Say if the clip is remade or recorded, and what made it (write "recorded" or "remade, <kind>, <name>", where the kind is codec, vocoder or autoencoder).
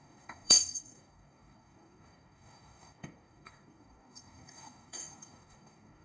remade, codec, DAC